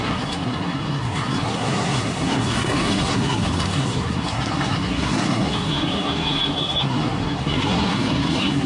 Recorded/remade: remade